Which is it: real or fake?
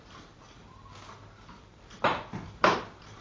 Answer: real